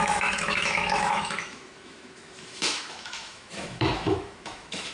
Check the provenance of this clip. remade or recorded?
remade